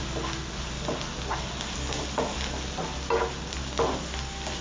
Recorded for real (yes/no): yes